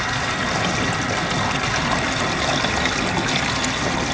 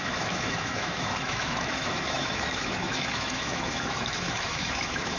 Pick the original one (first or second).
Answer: first